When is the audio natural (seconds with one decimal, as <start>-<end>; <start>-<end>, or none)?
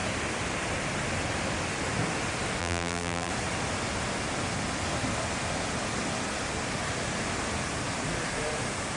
0.0-2.6; 3.3-9.0